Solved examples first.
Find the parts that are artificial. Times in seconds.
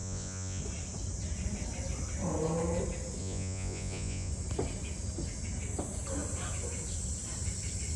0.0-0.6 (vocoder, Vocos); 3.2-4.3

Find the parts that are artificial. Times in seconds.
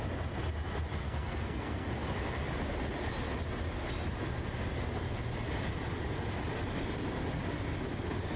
1.0-1.9 (codec, SNAC)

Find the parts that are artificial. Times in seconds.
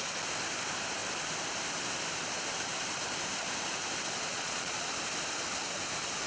4.3-4.9 (vocoder, Vocos)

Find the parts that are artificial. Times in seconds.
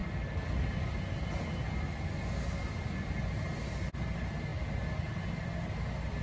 none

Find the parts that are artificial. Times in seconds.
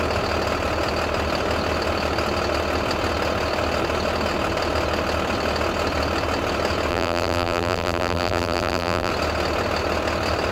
6.9-9.1 (vocoder, BigVGAN v2)